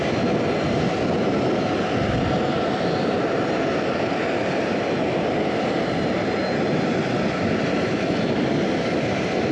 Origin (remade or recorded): recorded